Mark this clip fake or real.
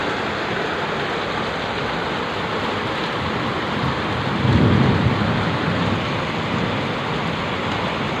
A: real